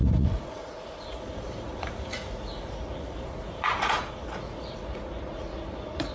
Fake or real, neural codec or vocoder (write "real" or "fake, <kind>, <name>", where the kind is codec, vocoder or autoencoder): fake, vocoder, Vocos